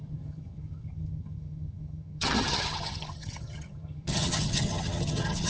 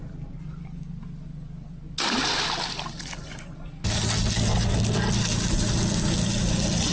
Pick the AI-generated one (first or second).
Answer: first